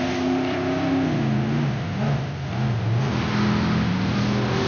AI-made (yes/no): no